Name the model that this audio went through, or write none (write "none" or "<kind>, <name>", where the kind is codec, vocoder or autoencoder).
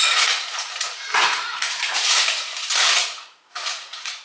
vocoder, Vocos